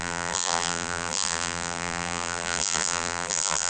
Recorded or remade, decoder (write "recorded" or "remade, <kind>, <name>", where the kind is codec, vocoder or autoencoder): remade, vocoder, BigVGAN v2